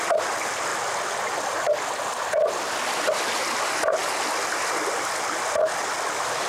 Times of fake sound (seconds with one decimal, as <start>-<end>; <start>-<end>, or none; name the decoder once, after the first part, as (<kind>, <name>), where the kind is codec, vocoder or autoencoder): none